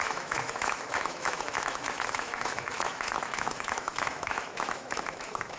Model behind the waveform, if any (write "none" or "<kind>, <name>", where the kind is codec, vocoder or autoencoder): autoencoder, DAC-VAE